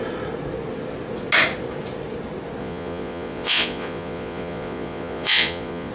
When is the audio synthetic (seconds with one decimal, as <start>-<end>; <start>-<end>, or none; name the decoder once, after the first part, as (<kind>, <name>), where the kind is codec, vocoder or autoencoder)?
2.6-5.9 (vocoder, Vocos)